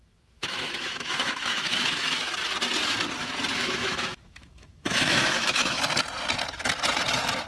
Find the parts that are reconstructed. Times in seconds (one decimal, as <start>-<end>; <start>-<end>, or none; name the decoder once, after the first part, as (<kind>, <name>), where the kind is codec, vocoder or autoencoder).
0.0-2.3 (autoencoder, DAC-VAE); 3.5-5.8